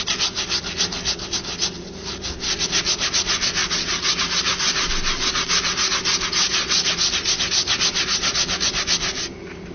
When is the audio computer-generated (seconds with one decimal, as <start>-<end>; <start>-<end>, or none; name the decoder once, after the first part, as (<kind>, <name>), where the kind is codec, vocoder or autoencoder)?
3.6-4.2 (vocoder, WaveNeXt)